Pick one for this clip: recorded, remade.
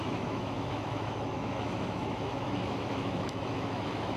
remade